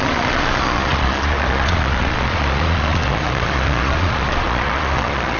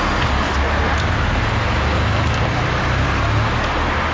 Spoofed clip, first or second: first